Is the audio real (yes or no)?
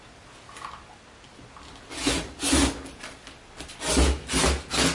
yes